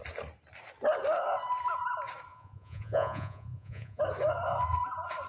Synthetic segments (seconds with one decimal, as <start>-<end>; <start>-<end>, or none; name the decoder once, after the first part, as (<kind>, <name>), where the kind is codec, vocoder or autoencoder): 2.3-4.0 (vocoder, Vocos)